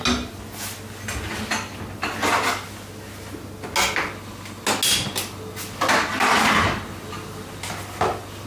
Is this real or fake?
real